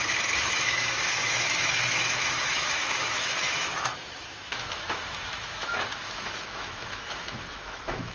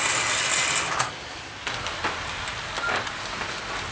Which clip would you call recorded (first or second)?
second